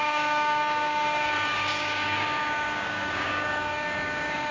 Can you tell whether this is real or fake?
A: fake